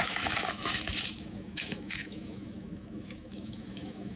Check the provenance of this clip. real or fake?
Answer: fake